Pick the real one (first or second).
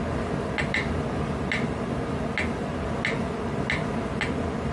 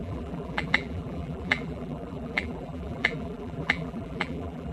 first